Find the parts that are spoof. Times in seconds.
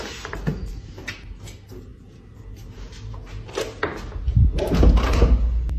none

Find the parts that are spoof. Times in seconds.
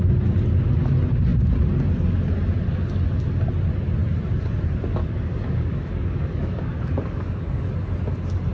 5.0-7.7 (codec, DAC)